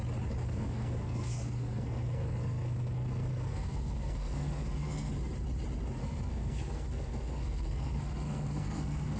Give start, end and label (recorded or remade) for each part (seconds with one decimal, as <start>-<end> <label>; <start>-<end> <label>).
0.0-0.4 recorded; 0.4-5.1 remade; 5.1-6.0 recorded; 6.0-9.2 remade